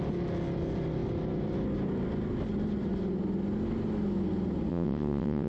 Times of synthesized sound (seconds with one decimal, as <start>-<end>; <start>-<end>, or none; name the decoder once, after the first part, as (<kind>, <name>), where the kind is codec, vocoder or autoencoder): 4.7-5.5 (vocoder, WaveNeXt)